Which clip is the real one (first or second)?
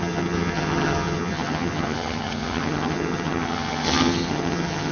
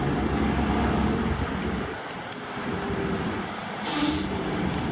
second